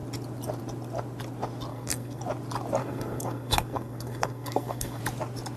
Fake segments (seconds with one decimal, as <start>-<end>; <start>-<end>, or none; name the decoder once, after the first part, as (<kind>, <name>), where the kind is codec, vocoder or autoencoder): 1.7-2.2 (codec, SNAC); 2.8-5.0